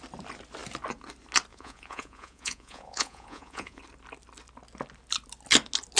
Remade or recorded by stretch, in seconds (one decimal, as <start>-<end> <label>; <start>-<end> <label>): 0.0-1.5 recorded; 1.5-3.8 remade; 3.8-6.0 recorded